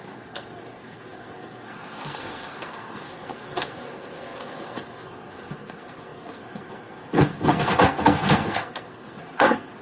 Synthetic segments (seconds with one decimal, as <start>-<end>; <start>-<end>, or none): 0.0-9.8